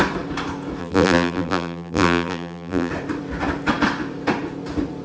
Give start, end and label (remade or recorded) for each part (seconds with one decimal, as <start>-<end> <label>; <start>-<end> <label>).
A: 0.0-0.8 recorded; 0.8-2.9 remade; 2.9-5.0 recorded